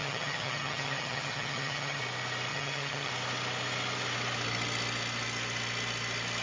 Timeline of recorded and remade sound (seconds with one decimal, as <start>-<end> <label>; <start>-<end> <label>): 0.0-2.0 remade; 2.0-2.5 recorded; 2.5-3.1 remade; 3.1-6.4 recorded